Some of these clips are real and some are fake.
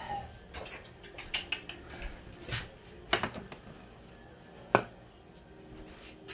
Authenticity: real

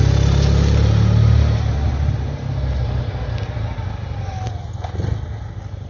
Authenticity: real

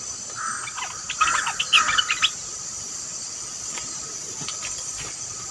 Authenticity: fake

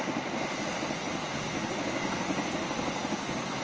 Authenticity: real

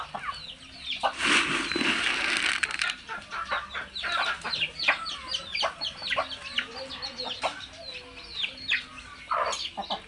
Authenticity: real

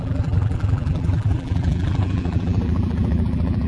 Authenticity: fake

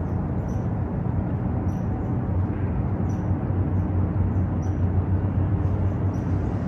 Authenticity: real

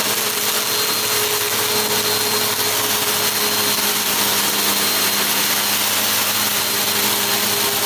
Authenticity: real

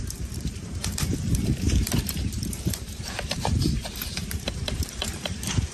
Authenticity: fake